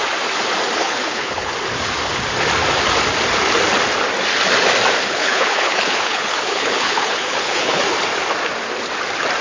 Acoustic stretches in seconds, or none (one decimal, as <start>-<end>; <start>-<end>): 0.0-0.8; 1.5-5.0; 7.8-9.4